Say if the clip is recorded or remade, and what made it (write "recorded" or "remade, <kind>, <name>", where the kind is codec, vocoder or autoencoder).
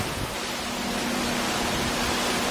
recorded